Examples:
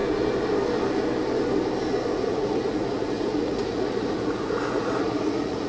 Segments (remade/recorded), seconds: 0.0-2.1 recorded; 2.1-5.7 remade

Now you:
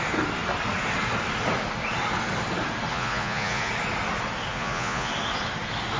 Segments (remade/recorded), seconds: 0.0-2.9 recorded; 2.9-3.7 remade; 3.7-4.5 recorded; 4.5-5.1 remade; 5.1-6.0 recorded